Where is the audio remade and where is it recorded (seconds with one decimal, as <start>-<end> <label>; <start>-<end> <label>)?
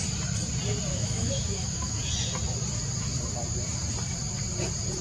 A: 0.0-0.9 recorded; 0.9-2.0 remade; 2.0-5.0 recorded